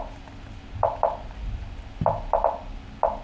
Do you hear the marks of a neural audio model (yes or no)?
no